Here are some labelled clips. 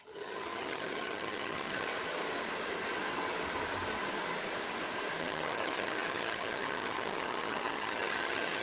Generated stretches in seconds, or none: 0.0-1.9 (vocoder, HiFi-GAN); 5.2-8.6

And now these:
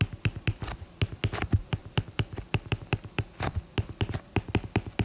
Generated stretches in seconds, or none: none

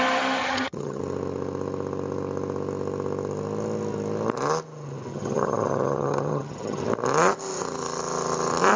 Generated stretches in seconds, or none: 0.4-1.0 (vocoder, HiFi-GAN); 5.1-6.8

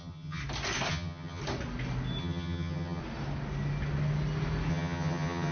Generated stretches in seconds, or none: 0.0-0.4 (vocoder, HiFi-GAN); 0.9-1.4; 2.2-3.0; 4.7-5.5